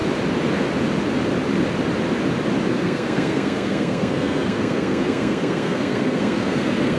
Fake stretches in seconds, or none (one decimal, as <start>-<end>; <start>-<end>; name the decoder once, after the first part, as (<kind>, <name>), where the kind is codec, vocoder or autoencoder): 2.7-7.0 (codec, SNAC)